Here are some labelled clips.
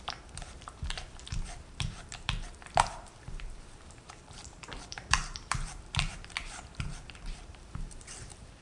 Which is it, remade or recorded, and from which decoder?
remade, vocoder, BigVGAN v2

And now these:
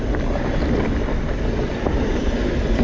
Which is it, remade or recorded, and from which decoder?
recorded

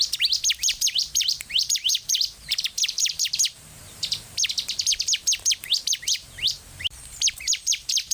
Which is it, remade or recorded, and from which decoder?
remade, vocoder, BigVGAN v2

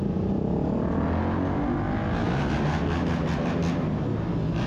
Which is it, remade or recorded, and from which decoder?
recorded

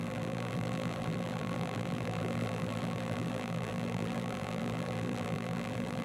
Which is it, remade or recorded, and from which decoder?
remade, vocoder, BigVGAN v2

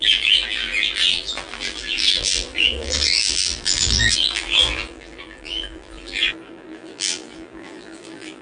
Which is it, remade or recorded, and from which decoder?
remade, vocoder, BigVGAN v2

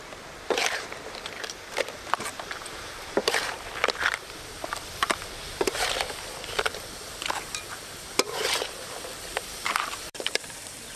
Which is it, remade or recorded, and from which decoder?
remade, vocoder, BigVGAN v2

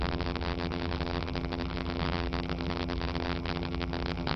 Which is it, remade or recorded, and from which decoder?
remade, vocoder, BigVGAN v2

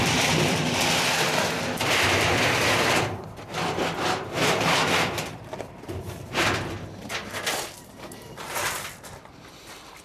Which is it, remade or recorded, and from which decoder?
remade, vocoder, BigVGAN v2